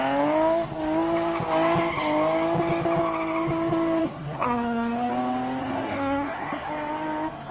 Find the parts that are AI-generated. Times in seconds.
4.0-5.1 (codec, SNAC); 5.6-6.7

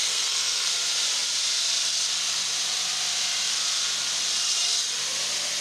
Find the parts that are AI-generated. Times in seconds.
0.0-0.7 (codec, SNAC)

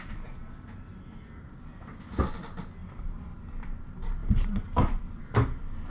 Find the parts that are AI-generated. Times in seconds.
none

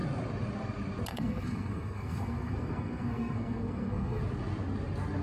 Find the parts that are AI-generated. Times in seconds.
1.1-4.2 (codec, SNAC)